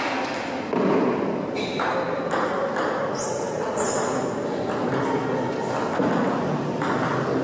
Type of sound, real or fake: real